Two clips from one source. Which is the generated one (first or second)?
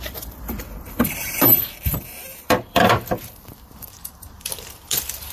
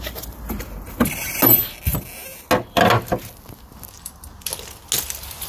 first